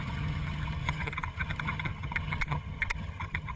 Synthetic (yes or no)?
yes